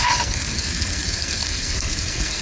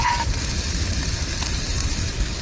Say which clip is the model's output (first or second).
first